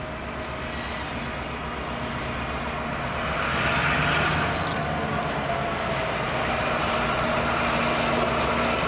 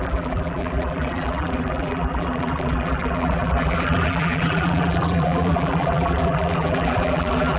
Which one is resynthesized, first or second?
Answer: second